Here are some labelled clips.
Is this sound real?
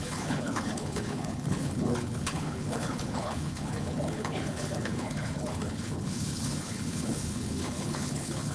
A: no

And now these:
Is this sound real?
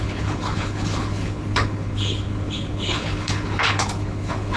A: no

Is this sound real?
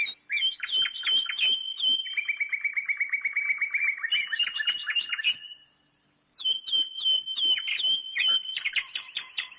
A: yes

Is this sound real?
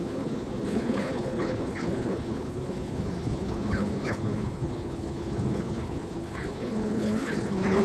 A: no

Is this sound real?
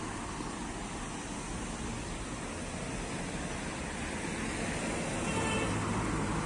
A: yes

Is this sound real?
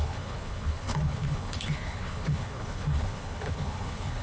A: no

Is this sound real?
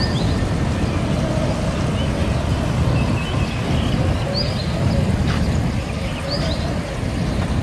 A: yes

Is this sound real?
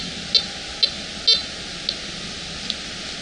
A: yes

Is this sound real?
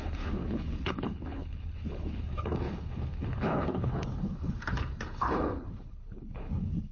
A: no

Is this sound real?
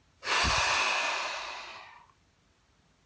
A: yes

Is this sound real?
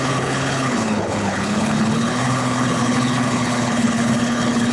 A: no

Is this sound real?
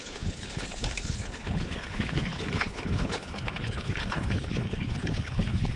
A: no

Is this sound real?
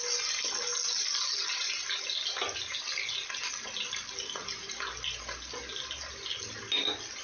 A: yes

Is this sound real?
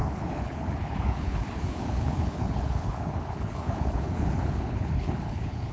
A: no